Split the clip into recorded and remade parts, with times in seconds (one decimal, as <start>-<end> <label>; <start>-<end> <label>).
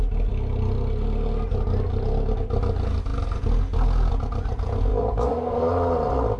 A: 0.0-4.9 recorded; 4.9-5.7 remade; 5.7-6.4 recorded